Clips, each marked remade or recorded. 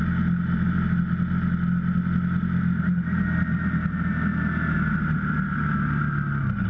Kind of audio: recorded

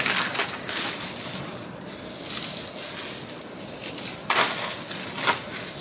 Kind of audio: recorded